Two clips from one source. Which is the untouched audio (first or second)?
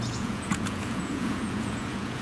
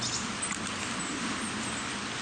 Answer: second